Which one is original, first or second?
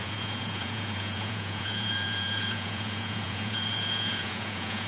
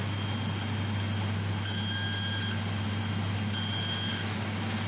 second